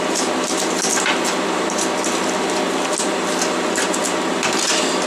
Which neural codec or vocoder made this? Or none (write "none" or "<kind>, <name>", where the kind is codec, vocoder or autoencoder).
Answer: none